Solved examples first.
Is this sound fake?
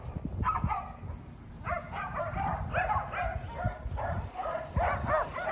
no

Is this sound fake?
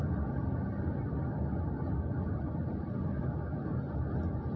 no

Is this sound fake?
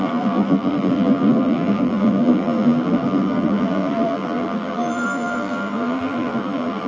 yes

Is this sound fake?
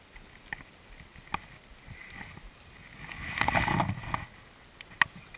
no